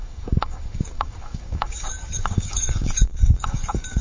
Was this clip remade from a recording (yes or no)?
yes